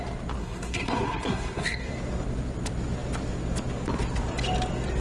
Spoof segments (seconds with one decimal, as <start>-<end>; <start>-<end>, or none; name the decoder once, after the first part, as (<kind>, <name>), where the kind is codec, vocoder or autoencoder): 0.4-1.9 (codec, SNAC)